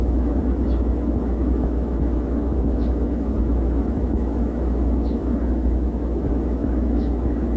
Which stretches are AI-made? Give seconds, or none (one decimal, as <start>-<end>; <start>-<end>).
0.0-7.6